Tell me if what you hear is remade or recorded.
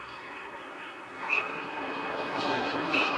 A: remade